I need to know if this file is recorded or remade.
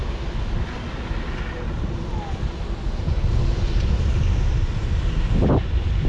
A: recorded